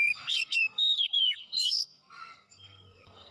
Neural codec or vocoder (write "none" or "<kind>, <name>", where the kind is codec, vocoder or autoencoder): codec, SNAC